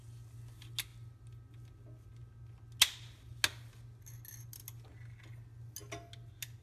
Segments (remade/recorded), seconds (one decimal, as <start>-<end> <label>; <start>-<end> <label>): 0.0-6.6 recorded